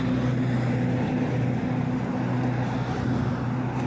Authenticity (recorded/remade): recorded